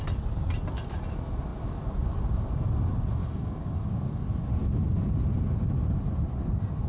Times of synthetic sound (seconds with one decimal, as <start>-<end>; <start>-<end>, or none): 3.2-4.0